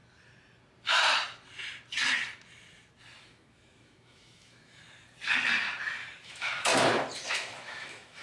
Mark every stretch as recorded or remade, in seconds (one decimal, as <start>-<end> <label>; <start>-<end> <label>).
0.0-3.2 recorded; 3.2-4.8 remade; 4.8-6.2 recorded; 6.2-6.7 remade; 6.7-7.3 recorded; 7.3-8.2 remade